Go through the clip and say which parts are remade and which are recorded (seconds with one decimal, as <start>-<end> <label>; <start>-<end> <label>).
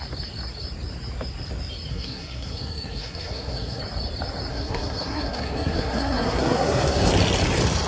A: 0.0-1.9 recorded; 1.9-3.8 remade; 3.8-4.5 recorded; 4.5-7.1 remade; 7.1-7.9 recorded